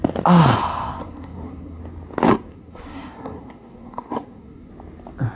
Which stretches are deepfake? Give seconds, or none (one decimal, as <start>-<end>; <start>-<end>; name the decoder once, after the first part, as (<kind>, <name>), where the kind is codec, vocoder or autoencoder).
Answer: 1.0-1.8 (codec, SNAC); 2.3-4.7